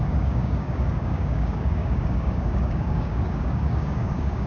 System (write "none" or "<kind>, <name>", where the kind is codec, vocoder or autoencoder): codec, DAC